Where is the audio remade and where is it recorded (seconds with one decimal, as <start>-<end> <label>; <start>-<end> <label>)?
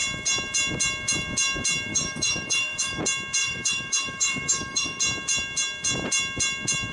0.0-1.9 recorded; 1.9-3.0 remade; 3.0-3.4 recorded; 3.4-5.0 remade; 5.0-6.9 recorded